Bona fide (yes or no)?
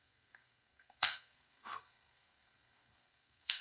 no